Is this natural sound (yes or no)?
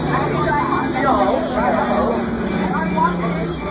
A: yes